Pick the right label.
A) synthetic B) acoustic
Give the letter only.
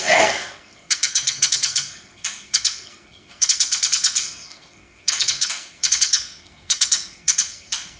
A